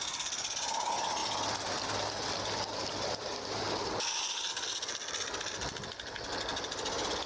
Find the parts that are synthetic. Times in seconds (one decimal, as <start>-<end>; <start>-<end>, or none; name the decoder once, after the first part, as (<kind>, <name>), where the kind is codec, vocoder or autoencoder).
none